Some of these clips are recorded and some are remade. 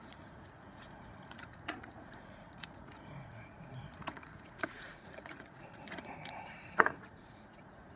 remade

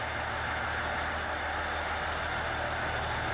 recorded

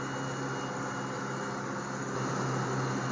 recorded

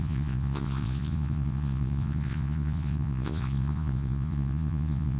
remade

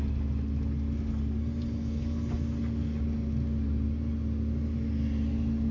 recorded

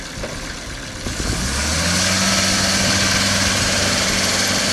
recorded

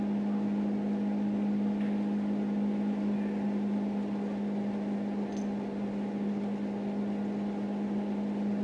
recorded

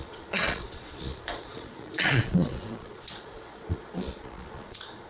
remade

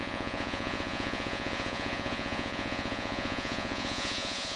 remade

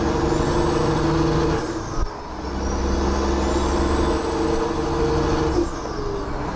recorded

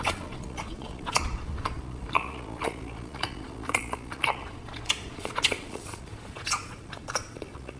remade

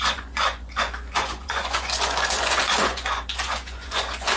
remade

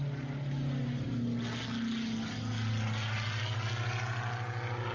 recorded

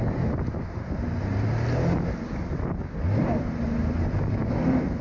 recorded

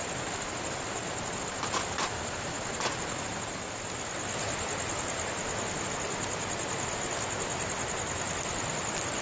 recorded